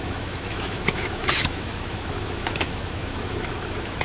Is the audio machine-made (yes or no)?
yes